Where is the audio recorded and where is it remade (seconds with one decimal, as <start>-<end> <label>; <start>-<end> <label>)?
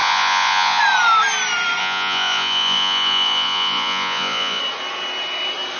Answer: 0.0-0.8 remade; 0.8-1.8 recorded; 1.8-4.6 remade; 4.6-5.8 recorded